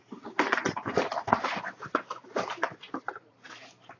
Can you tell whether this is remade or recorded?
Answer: remade